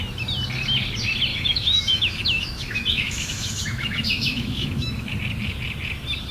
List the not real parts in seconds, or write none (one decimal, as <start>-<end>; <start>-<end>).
1.3-5.1